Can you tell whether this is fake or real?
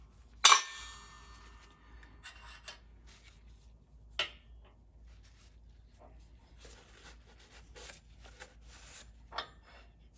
real